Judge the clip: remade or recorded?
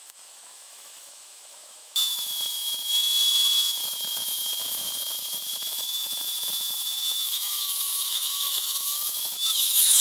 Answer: remade